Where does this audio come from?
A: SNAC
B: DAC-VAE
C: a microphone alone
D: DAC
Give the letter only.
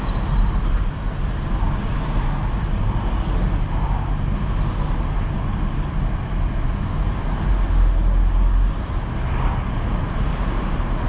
C